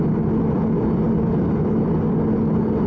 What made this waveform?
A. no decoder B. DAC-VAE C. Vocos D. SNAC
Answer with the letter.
A